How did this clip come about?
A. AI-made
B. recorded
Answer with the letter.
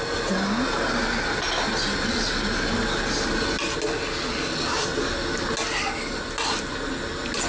B